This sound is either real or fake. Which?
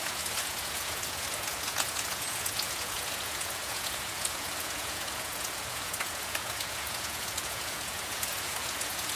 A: fake